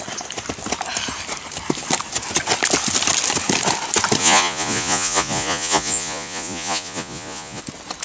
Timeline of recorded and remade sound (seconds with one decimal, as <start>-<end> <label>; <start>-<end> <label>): 0.0-4.2 recorded; 4.2-7.6 remade; 7.6-8.0 recorded